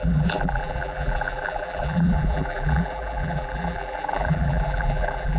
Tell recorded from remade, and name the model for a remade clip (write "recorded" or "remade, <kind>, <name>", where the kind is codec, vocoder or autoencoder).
remade, vocoder, BigVGAN v2